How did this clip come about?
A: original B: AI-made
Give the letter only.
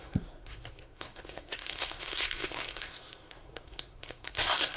B